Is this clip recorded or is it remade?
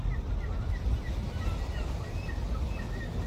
recorded